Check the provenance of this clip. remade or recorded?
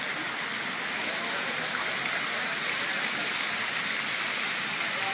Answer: recorded